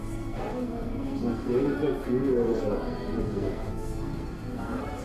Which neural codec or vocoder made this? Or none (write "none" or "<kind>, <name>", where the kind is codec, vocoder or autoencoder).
codec, SNAC